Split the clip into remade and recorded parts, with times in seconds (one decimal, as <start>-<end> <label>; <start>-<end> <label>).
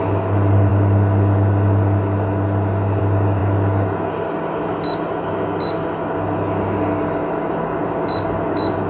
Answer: 0.0-8.9 recorded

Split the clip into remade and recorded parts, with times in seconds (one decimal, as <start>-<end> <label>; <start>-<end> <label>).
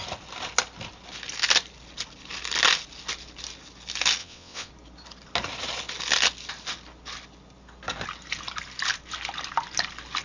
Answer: 0.0-4.2 recorded; 4.2-4.7 remade; 4.7-10.2 recorded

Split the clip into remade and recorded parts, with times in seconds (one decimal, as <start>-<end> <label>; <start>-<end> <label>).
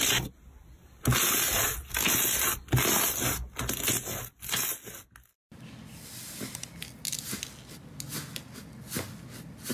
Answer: 0.0-9.7 recorded